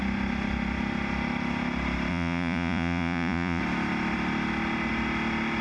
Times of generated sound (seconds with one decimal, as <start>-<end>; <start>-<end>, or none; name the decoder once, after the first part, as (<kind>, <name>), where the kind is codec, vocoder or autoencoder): 2.1-3.6 (vocoder, Vocos)